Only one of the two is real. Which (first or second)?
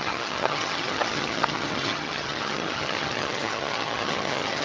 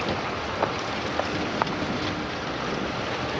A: second